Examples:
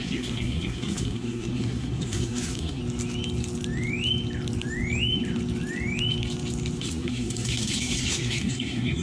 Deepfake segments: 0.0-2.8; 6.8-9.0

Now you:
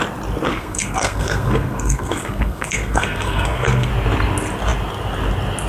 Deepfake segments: 0.5-3.9

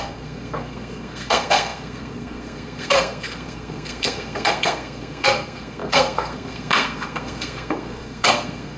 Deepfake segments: 0.0-8.8

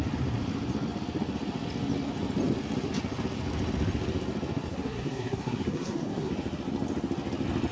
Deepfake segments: 4.7-6.3